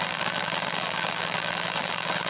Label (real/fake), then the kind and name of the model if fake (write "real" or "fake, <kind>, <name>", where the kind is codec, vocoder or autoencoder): fake, vocoder, BigVGAN v2